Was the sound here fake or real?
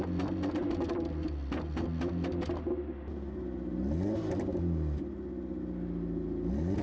real